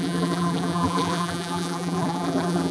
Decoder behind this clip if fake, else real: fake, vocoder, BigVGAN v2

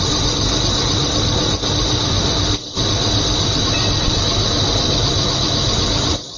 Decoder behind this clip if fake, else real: real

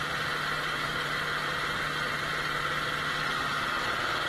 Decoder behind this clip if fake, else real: real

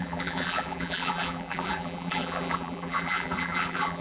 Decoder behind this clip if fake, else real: fake, vocoder, BigVGAN v2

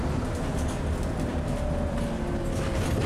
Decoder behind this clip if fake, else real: real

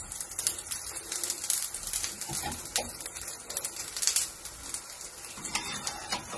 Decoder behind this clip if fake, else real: fake, vocoder, BigVGAN v2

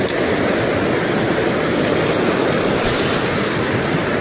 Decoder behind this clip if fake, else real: real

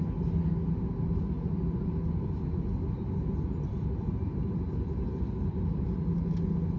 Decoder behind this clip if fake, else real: real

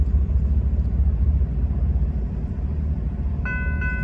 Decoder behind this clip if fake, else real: real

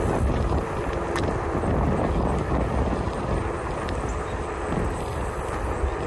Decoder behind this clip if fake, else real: real